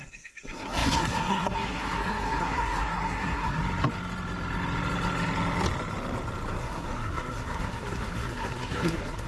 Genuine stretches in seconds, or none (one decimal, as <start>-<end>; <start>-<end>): 3.6-6.6